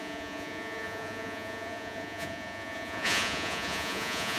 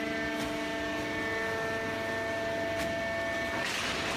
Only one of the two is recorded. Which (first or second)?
second